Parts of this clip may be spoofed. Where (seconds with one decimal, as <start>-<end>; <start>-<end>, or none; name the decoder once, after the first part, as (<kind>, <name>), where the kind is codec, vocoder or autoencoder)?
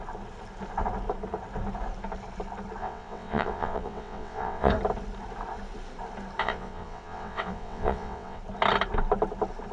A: 2.8-4.7 (vocoder, WaveNeXt); 6.4-8.4